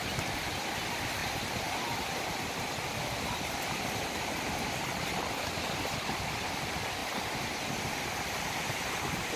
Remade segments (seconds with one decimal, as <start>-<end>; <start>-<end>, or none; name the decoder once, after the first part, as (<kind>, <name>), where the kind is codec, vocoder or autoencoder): 0.0-1.2 (vocoder, BigVGAN v2); 6.0-7.0; 7.9-9.4